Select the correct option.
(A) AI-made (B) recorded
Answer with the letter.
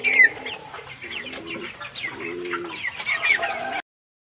B